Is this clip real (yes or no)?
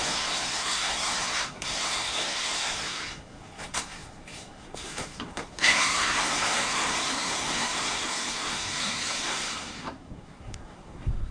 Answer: no